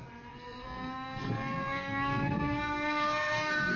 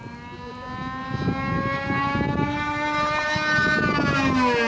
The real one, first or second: second